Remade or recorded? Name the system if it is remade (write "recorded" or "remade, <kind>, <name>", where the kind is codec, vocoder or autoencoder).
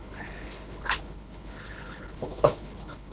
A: remade, codec, HILCodec